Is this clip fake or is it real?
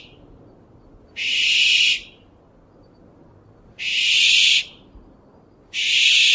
real